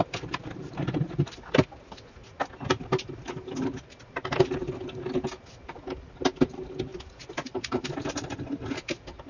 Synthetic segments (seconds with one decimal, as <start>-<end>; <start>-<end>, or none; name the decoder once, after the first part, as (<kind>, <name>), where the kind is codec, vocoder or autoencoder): none